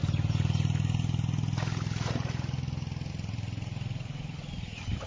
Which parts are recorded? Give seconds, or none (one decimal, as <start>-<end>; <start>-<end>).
0.0-3.1